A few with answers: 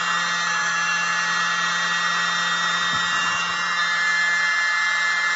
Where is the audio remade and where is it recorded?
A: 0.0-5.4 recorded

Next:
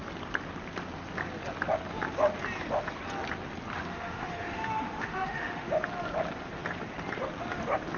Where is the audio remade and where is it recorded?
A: 0.0-3.7 recorded; 3.7-5.7 remade; 5.7-8.0 recorded

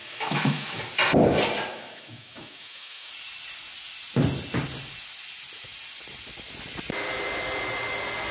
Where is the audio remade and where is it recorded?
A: 0.0-0.8 remade; 0.8-1.7 recorded; 1.7-3.1 remade; 3.1-8.3 recorded

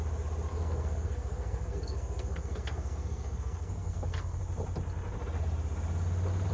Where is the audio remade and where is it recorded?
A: 0.0-0.5 recorded; 0.5-4.4 remade; 4.4-6.5 recorded

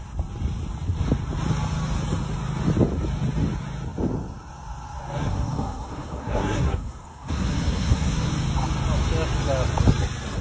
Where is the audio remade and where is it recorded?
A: 0.0-5.2 recorded; 5.2-8.3 remade; 8.3-10.4 recorded

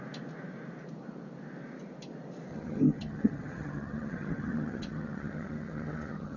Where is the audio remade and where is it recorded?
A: 0.0-2.5 recorded; 2.5-6.4 remade

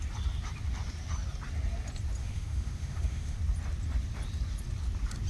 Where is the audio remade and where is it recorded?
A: 0.0-2.2 recorded; 2.2-3.4 remade; 3.4-5.3 recorded